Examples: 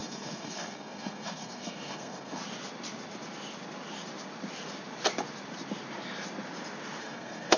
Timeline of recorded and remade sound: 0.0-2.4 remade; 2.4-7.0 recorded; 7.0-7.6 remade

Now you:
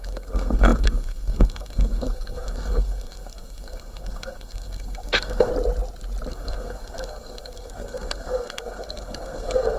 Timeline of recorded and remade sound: 0.0-5.5 remade; 5.5-6.3 recorded; 6.3-9.8 remade